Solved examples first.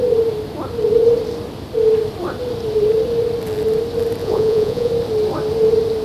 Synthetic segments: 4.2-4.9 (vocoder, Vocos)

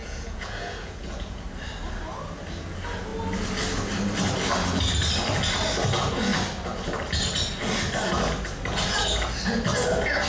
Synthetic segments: 0.0-1.4 (vocoder, Vocos)

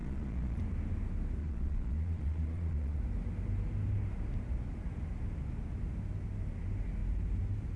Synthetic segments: 0.0-0.6 (vocoder, Vocos); 1.4-3.0

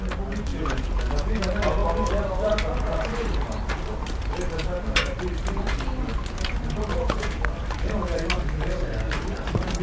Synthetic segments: 0.5-1.3 (vocoder, Vocos); 6.9-7.4

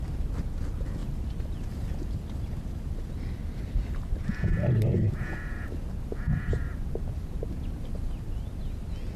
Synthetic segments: none